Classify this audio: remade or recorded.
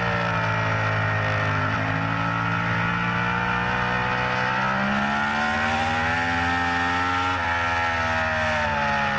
recorded